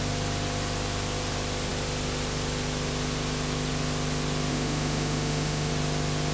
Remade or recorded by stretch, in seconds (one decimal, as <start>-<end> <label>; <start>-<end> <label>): 0.0-4.5 recorded; 4.5-5.7 remade; 5.7-6.3 recorded